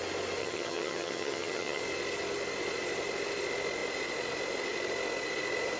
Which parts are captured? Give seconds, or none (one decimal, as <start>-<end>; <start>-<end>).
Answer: 0.0-0.4; 1.8-5.8